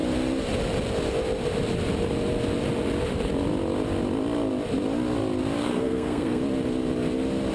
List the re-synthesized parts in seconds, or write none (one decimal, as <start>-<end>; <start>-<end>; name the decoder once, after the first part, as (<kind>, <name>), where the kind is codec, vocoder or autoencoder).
5.6-6.4 (codec, SNAC)